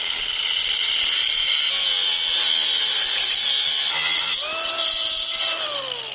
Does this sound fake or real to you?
real